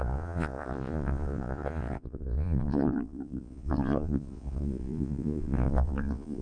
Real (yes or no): no